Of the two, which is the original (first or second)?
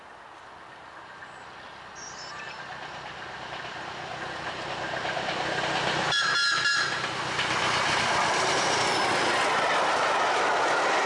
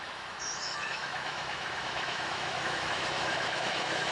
first